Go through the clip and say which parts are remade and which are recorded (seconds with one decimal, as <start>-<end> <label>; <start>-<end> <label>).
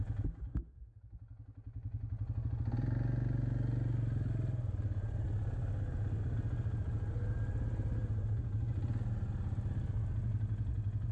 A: 0.0-0.5 recorded; 0.5-1.0 remade; 1.0-11.1 recorded